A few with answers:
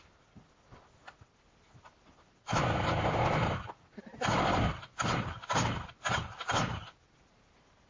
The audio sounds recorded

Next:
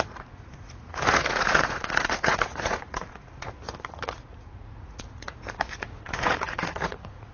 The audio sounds remade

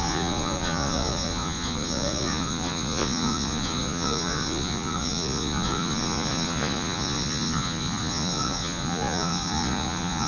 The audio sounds remade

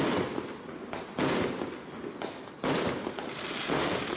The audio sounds recorded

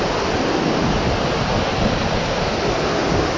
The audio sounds recorded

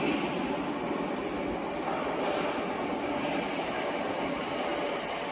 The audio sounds recorded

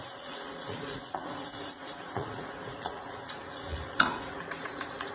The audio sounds remade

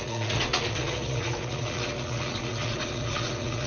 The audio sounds remade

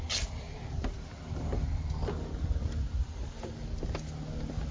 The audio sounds recorded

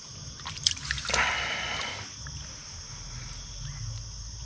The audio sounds recorded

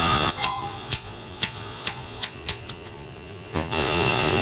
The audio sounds remade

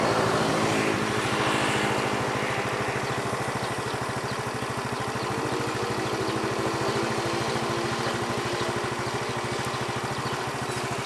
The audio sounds recorded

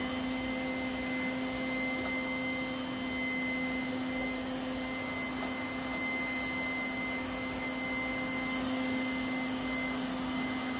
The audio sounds recorded